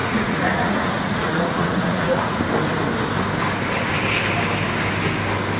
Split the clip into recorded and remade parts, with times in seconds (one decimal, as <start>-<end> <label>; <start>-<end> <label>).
0.0-2.4 remade; 2.4-5.6 recorded